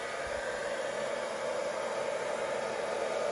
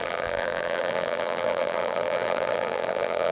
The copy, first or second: second